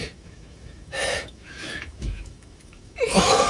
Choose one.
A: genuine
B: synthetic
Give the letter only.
B